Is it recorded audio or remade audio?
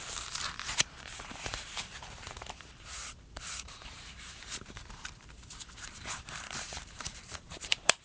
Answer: remade